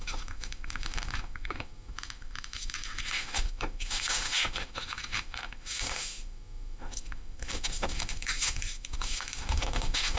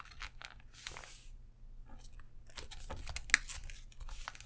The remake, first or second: first